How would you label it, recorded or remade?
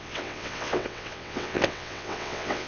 remade